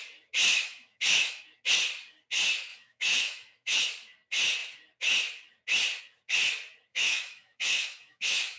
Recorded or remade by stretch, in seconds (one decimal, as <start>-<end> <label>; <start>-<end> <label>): 0.0-0.5 recorded; 0.5-1.4 remade; 1.4-2.7 recorded; 2.7-3.8 remade; 3.8-6.9 recorded; 6.9-8.6 remade